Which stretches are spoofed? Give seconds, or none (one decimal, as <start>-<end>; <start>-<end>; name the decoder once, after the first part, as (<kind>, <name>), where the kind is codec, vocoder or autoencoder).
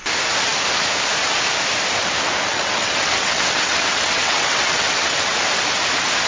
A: 2.5-5.4 (vocoder, WaveNeXt)